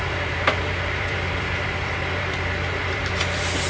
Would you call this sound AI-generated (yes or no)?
yes